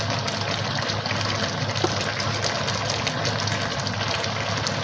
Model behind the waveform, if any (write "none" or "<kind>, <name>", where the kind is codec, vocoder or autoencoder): none